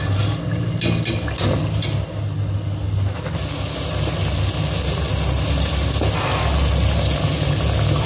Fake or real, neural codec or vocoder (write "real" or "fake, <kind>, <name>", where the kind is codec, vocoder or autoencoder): real